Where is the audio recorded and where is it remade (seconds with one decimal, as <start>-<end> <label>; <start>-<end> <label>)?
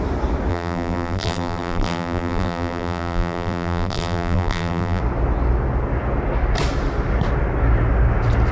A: 0.0-0.5 recorded; 0.5-5.0 remade; 5.0-8.5 recorded